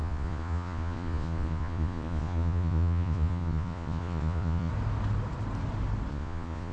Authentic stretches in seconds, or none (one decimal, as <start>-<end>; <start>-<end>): 4.7-6.1